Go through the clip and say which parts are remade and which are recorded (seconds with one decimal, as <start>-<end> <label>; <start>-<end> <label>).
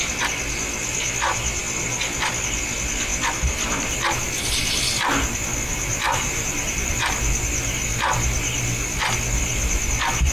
0.0-5.7 recorded; 5.7-7.1 remade; 7.1-10.3 recorded